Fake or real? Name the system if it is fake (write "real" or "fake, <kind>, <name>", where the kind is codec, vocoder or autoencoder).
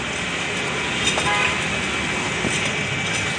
real